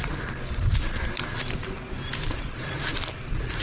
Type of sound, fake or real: real